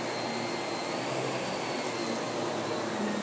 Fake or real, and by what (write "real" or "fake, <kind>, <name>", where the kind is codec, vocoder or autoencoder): real